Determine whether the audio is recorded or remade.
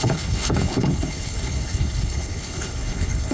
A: remade